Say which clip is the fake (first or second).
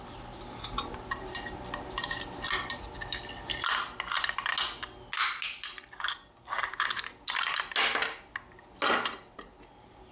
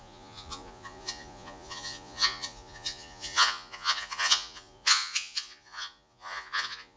second